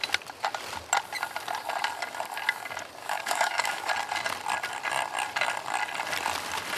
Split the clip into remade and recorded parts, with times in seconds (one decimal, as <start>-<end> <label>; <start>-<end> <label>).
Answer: 0.0-3.0 recorded; 3.0-3.9 remade; 3.9-6.8 recorded